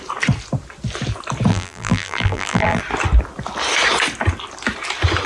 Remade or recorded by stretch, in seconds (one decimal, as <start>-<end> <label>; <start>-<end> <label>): 0.0-1.5 recorded; 1.5-2.8 remade; 2.8-5.3 recorded